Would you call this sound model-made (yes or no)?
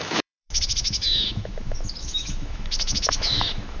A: yes